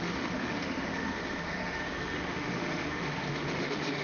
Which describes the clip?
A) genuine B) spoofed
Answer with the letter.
B